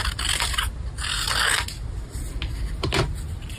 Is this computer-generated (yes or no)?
no